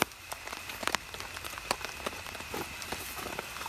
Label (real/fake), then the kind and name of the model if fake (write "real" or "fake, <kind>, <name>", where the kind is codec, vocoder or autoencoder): real